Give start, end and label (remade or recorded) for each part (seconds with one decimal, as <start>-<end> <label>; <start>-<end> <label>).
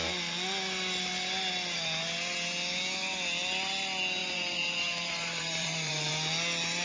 0.0-4.2 recorded; 4.2-6.1 remade; 6.1-6.8 recorded